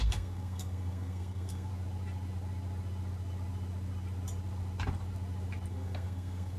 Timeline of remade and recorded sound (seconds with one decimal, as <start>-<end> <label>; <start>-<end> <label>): 0.0-1.7 remade; 1.7-5.7 recorded; 5.7-6.6 remade